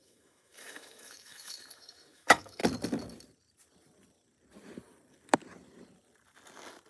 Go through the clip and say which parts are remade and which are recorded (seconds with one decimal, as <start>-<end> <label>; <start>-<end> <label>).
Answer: 0.0-2.6 remade; 2.6-6.9 recorded